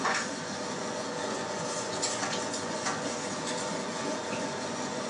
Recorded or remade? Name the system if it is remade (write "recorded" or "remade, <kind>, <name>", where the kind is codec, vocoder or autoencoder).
remade, vocoder, Vocos